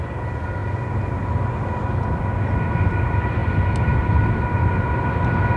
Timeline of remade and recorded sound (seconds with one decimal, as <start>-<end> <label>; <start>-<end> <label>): 0.0-5.6 recorded